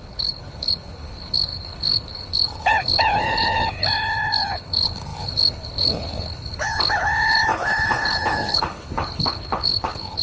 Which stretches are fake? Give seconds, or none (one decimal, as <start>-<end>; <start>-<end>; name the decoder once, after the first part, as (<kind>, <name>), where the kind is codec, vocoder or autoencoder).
0.0-10.2 (codec, HILCodec)